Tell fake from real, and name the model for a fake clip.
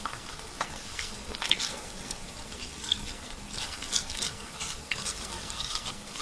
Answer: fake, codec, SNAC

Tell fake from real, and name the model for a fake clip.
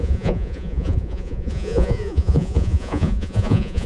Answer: fake, vocoder, Vocos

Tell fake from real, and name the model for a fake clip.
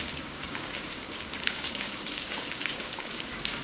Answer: fake, codec, DAC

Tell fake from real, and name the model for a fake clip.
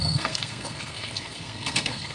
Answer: fake, codec, SNAC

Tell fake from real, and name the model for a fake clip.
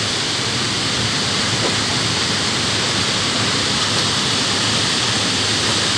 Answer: fake, vocoder, BigVGAN v2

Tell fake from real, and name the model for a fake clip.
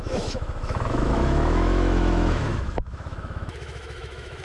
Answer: fake, autoencoder, DAC-VAE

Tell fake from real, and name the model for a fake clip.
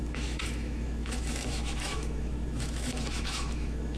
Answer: fake, autoencoder, DAC-VAE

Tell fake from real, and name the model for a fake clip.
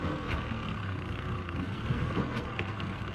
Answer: fake, codec, SNAC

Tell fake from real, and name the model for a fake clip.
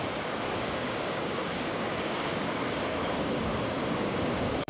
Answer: fake, codec, DAC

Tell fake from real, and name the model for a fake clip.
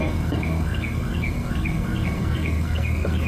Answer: fake, codec, SNAC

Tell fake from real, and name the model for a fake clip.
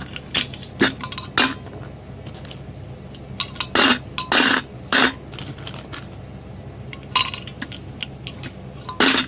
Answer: real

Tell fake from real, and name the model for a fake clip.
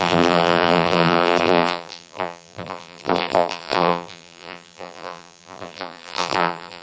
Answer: fake, vocoder, BigVGAN v2